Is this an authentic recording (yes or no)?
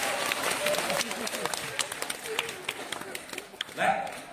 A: yes